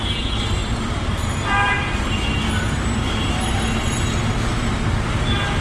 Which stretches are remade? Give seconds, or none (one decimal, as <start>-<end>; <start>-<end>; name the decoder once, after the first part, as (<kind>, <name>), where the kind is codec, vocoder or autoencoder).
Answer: 0.6-2.4 (vocoder, BigVGAN v2)